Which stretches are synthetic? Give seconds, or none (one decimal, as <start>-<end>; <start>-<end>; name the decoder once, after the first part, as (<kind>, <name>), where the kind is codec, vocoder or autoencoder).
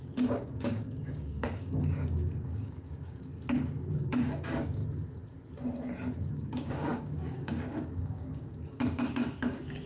0.0-3.3 (codec, DAC); 3.9-4.8; 6.3-9.9